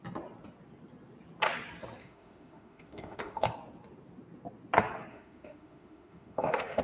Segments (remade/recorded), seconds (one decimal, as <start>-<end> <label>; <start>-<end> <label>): 0.0-2.0 recorded; 2.0-3.5 remade; 3.5-5.1 recorded; 5.1-6.8 remade